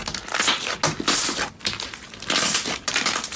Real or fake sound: real